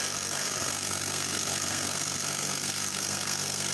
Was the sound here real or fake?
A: fake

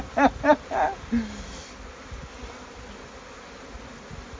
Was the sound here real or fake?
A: real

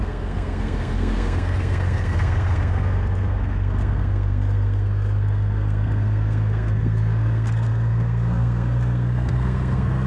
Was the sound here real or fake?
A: fake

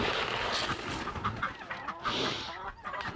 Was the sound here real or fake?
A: real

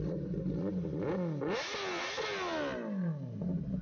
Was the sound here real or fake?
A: real